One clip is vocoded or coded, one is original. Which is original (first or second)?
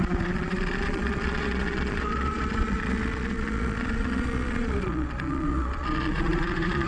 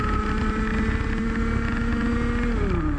second